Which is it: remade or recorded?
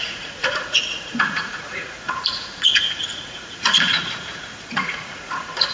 remade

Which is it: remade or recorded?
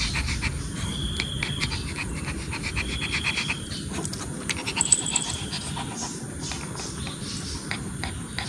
recorded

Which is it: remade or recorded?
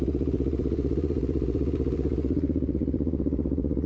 remade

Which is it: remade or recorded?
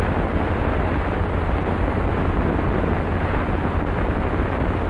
recorded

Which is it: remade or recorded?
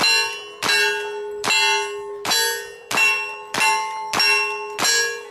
recorded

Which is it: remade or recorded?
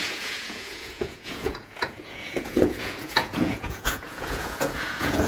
remade